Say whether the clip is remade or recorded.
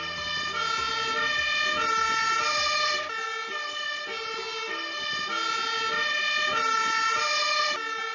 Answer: recorded